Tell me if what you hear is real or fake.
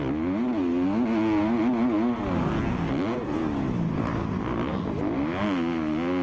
real